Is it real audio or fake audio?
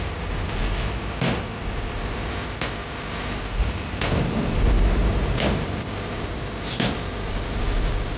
real